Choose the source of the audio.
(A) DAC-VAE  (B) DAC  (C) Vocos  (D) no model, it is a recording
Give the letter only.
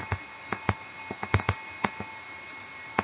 D